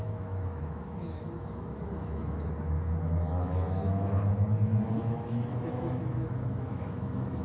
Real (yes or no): no